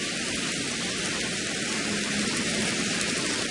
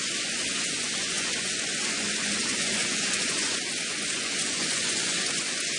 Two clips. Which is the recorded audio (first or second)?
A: first